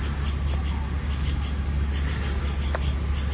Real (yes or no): yes